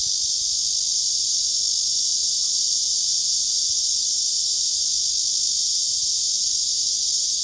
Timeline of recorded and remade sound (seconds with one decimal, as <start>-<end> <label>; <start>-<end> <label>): 0.0-0.9 recorded; 0.9-1.6 remade; 1.6-2.2 recorded; 2.2-4.8 remade; 4.8-5.6 recorded; 5.6-7.4 remade